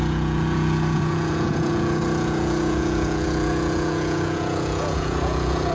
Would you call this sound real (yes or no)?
no